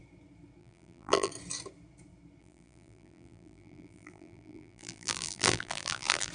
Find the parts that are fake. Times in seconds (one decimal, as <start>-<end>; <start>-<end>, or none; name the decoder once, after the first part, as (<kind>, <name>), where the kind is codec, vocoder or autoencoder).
0.6-1.3 (vocoder, BigVGAN v2); 2.4-6.3